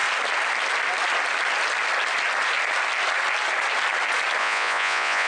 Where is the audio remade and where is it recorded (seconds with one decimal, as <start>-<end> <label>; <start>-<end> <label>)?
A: 0.0-4.4 recorded; 4.4-5.3 remade

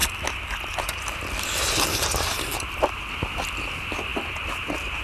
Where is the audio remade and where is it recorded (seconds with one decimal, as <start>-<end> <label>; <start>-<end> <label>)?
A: 0.0-3.0 remade; 3.0-5.0 recorded

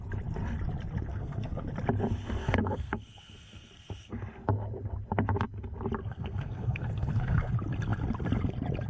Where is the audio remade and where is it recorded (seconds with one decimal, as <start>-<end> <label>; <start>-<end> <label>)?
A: 0.0-1.1 recorded; 1.1-1.7 remade; 1.7-2.4 recorded; 2.4-4.2 remade; 4.2-6.0 recorded; 6.0-7.5 remade; 7.5-8.9 recorded